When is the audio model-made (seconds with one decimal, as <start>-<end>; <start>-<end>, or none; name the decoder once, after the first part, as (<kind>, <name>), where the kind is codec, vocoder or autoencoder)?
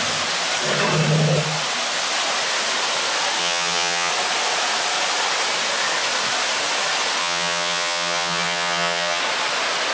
3.4-4.1 (vocoder, HiFi-GAN); 7.2-9.2